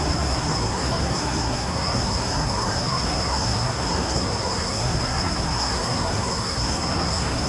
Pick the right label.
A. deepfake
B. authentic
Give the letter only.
A